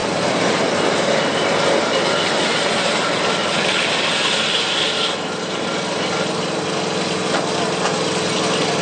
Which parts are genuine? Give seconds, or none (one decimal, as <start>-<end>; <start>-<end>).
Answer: 0.6-8.8